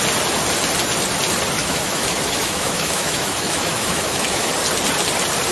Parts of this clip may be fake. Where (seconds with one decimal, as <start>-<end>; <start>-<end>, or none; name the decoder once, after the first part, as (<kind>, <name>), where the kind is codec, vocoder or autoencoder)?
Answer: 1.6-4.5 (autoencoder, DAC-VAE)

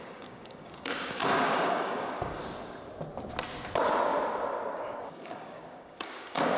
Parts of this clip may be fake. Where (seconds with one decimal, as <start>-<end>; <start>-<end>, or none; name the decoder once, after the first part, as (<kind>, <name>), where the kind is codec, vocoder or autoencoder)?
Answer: 0.0-2.4 (codec, DAC); 5.0-6.6

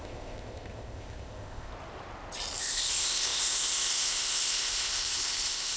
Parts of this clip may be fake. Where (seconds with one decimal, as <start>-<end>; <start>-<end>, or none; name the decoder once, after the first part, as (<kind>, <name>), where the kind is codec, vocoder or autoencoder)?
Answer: 0.0-1.7 (codec, ZipCodec); 2.6-5.8